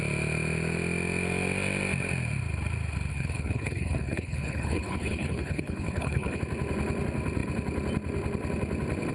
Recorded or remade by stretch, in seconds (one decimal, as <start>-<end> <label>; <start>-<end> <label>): 0.0-3.1 recorded; 3.1-6.4 remade; 6.4-9.1 recorded